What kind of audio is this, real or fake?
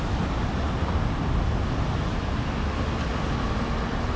real